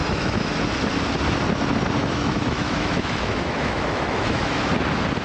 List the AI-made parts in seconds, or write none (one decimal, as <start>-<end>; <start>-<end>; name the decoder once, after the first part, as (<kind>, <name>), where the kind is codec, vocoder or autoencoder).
0.0-0.6 (autoencoder, DAC-VAE); 2.0-4.7